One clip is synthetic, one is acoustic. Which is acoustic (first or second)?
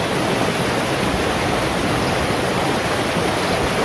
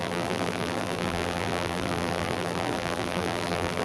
first